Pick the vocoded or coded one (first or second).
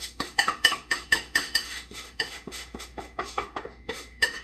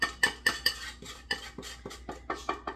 first